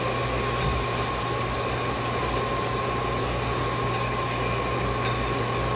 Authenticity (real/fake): real